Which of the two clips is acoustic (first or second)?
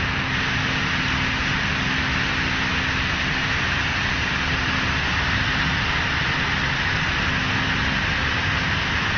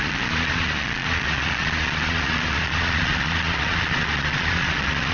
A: first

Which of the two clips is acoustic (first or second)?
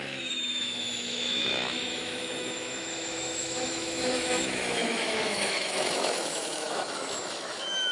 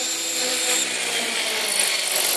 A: second